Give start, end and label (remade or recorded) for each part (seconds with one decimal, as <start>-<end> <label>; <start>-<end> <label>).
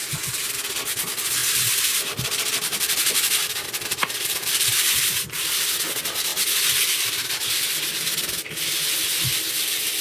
0.0-1.4 recorded; 1.4-5.7 remade; 5.7-6.3 recorded; 6.3-7.5 remade; 7.5-10.0 recorded